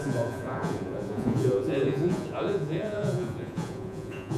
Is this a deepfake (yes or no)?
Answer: yes